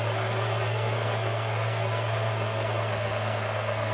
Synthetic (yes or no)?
yes